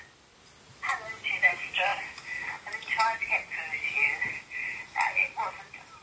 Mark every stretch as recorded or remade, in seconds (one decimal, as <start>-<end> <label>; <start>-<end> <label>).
0.0-6.0 recorded